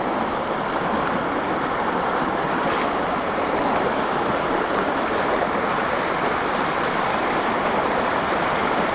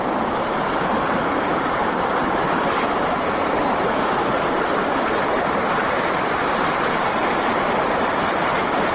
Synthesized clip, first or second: second